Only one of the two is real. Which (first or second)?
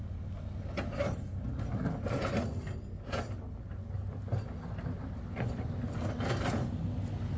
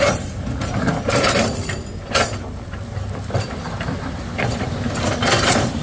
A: first